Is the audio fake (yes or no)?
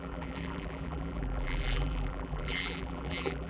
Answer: yes